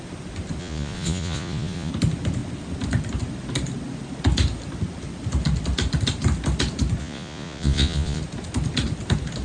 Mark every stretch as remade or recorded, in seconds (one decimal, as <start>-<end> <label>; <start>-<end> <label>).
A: 0.0-0.6 recorded; 0.6-1.9 remade; 1.9-7.0 recorded; 7.0-8.2 remade; 8.2-9.4 recorded